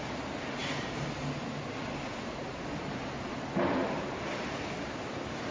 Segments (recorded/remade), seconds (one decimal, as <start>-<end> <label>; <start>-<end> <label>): 0.0-5.5 recorded